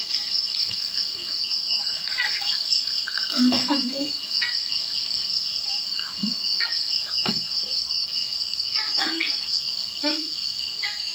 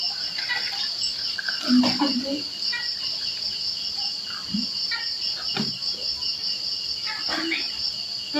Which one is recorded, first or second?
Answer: second